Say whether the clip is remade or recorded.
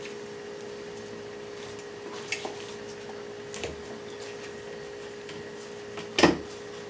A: recorded